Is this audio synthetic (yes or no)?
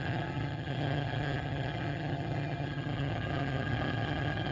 yes